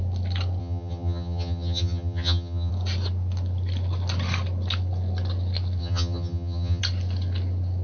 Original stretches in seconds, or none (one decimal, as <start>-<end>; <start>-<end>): 0.0-0.6; 2.7-5.8; 6.8-7.8